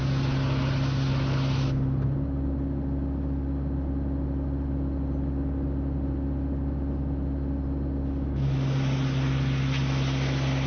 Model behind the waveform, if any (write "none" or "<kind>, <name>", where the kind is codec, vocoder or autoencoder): none